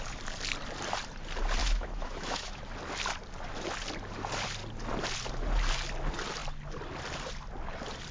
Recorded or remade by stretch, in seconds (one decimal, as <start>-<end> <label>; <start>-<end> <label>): 0.0-1.6 recorded; 1.6-2.6 remade; 2.6-8.1 recorded